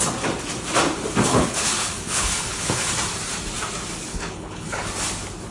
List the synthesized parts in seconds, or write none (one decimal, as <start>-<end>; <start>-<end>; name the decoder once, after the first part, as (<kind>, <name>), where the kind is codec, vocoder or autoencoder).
1.3-2.9 (codec, HILCodec); 4.1-4.9